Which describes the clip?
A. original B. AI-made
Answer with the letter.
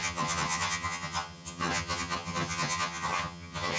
B